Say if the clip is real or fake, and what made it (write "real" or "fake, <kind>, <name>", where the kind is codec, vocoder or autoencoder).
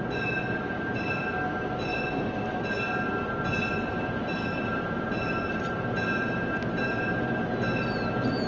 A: real